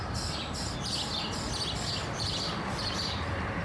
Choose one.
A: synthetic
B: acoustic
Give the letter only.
B